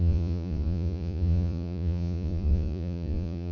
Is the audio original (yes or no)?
no